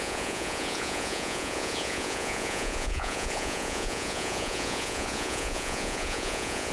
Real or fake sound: fake